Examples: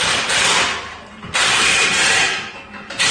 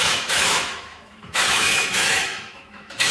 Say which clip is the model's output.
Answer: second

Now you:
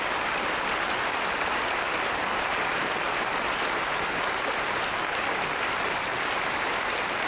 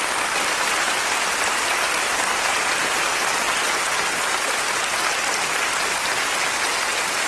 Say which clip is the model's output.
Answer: first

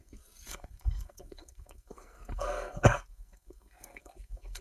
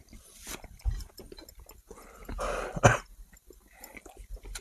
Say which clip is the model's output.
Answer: first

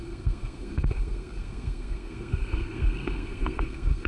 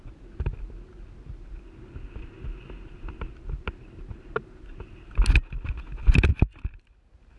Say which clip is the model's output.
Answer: first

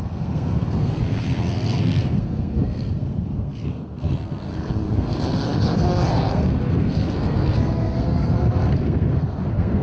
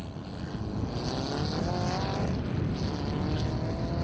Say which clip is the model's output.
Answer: first